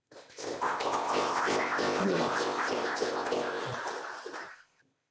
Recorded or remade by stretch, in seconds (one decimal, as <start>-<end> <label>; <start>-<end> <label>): 0.0-3.6 remade; 3.6-4.5 recorded; 4.5-5.1 remade

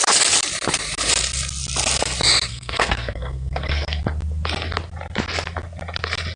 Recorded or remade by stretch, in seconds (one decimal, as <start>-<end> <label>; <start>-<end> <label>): 0.0-2.5 recorded; 2.5-4.0 remade; 4.0-6.4 recorded